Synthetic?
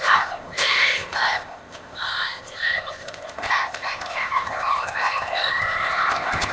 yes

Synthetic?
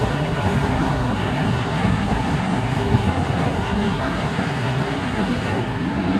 yes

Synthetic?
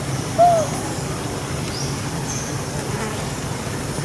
no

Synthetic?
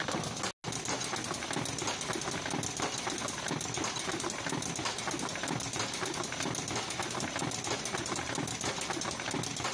no